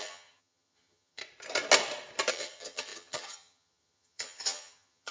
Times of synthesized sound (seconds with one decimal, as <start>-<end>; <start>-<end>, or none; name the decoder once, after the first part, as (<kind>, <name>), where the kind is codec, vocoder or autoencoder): 0.0-1.2 (vocoder, HiFi-GAN); 2.3-5.1